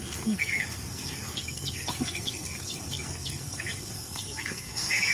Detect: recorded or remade remade